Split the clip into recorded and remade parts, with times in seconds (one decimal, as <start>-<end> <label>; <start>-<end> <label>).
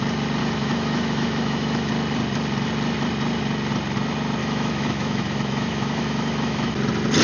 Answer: 0.0-0.4 recorded; 0.4-1.9 remade; 1.9-4.4 recorded; 4.4-6.7 remade; 6.7-7.2 recorded